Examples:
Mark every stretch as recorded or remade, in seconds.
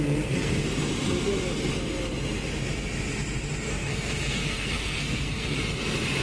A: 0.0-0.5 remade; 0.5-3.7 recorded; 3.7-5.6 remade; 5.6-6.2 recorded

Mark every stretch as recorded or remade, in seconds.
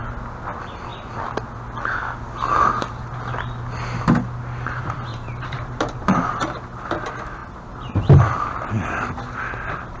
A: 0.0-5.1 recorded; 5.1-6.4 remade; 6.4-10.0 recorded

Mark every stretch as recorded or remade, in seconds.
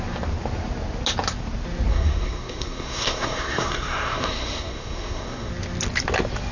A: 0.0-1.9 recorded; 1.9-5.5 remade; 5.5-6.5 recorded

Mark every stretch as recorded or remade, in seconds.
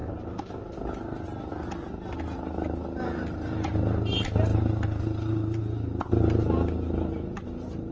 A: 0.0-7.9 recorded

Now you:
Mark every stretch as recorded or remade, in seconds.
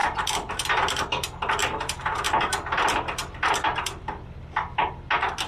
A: 0.0-0.5 remade; 0.5-1.6 recorded; 1.6-2.4 remade; 2.4-3.2 recorded; 3.2-4.9 remade; 4.9-5.5 recorded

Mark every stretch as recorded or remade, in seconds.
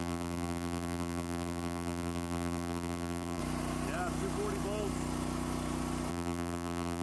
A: 0.0-3.4 remade; 3.4-6.1 recorded; 6.1-7.0 remade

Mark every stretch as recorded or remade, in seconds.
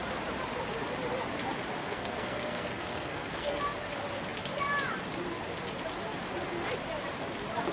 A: 0.0-1.8 recorded; 1.8-3.6 remade; 3.6-7.7 recorded